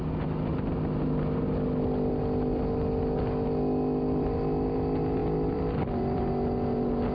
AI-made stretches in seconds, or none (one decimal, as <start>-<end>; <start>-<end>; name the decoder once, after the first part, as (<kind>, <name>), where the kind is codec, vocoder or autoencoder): 5.2-6.2 (vocoder, BigVGAN v2)